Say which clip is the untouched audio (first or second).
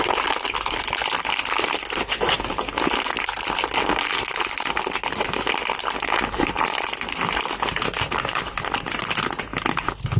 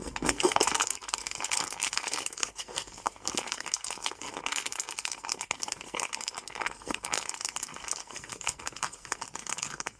first